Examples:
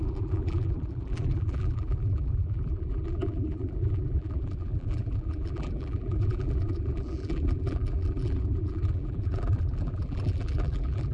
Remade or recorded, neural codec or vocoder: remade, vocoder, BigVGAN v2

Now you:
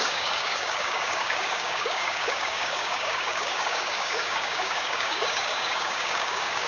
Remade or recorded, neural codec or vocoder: remade, codec, DAC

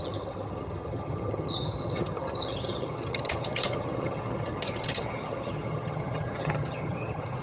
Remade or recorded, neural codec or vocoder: remade, vocoder, HiFi-GAN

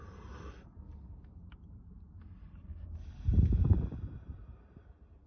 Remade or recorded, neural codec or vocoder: remade, vocoder, BigVGAN v2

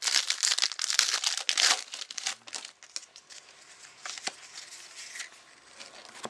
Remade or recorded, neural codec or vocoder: recorded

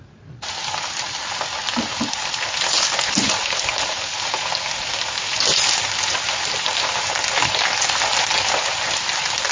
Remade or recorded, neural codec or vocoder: recorded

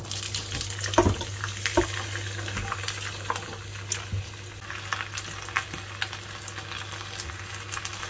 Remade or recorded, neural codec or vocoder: recorded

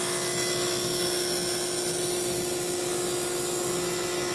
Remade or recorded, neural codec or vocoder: recorded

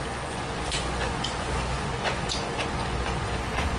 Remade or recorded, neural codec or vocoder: remade, vocoder, Vocos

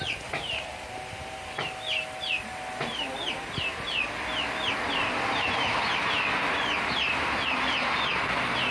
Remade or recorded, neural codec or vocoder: recorded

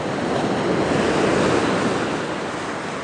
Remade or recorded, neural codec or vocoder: recorded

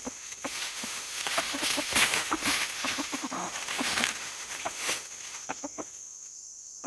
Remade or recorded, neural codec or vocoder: remade, autoencoder, DAC-VAE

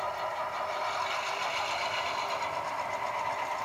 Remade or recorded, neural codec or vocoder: recorded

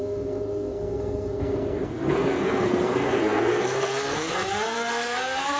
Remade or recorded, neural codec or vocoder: remade, codec, SNAC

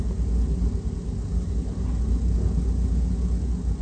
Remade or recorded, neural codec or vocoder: recorded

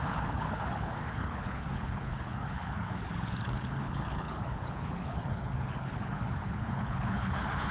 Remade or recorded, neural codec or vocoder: remade, codec, HILCodec